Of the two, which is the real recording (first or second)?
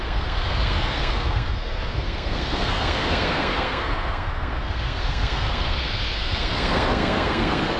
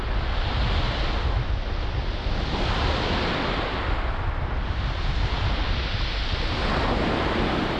second